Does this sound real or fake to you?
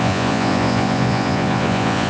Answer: fake